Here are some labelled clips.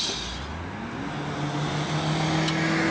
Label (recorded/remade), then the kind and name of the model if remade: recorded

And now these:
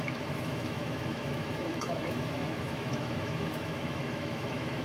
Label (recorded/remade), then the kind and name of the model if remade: remade, autoencoder, DAC-VAE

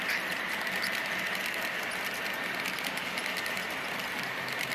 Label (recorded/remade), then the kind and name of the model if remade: recorded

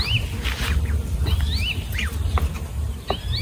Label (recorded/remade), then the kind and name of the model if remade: recorded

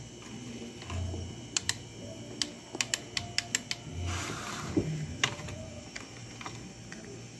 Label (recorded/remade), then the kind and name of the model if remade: recorded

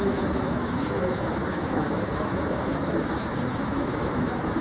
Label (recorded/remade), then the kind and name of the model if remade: remade, autoencoder, DAC-VAE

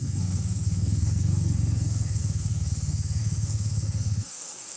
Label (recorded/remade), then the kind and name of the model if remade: remade, codec, SNAC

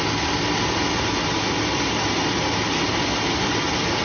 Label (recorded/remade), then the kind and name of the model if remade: recorded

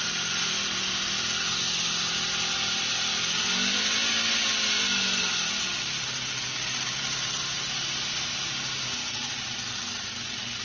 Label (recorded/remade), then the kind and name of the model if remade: recorded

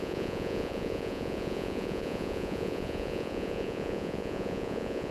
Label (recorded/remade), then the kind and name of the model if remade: remade, vocoder, Vocos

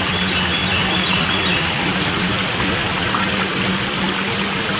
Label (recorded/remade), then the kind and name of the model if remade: recorded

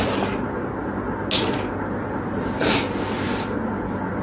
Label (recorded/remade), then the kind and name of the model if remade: recorded